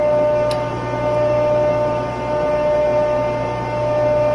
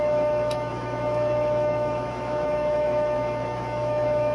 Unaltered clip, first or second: first